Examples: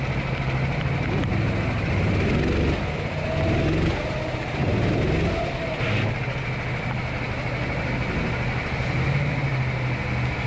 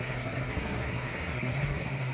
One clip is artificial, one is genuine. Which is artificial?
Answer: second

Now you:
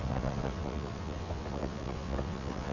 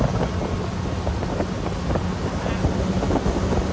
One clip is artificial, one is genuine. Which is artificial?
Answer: first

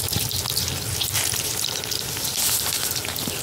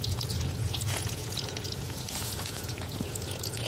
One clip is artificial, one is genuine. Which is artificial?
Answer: second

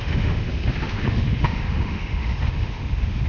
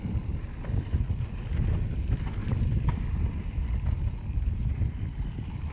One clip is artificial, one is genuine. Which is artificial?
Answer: first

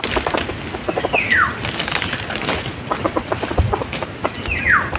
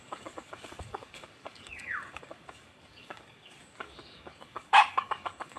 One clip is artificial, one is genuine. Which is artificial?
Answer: second